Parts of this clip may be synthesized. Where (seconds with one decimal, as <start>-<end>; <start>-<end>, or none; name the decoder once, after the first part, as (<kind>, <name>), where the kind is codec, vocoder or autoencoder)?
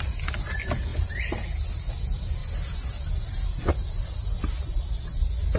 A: none